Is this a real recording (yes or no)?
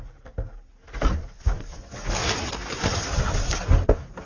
yes